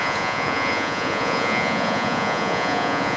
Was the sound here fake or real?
fake